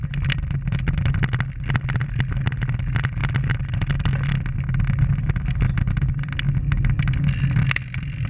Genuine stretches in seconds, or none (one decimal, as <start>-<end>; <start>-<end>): 0.0-8.3